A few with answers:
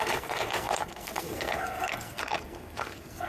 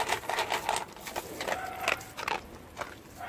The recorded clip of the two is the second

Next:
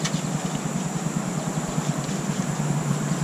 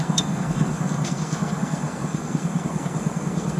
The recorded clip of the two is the first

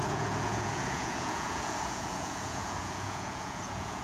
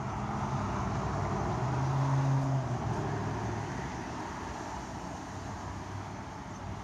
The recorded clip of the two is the second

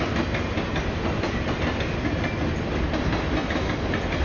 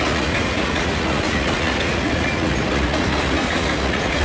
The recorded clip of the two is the first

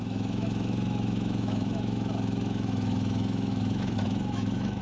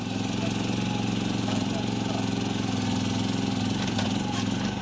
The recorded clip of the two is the second